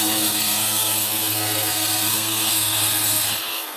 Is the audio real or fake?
fake